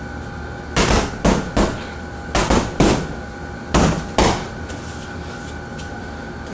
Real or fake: real